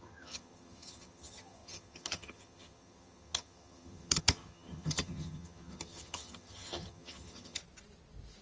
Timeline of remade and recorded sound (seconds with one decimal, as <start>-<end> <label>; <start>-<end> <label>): 0.0-7.6 remade; 7.6-8.4 recorded